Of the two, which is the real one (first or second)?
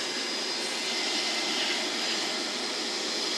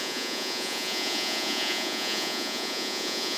first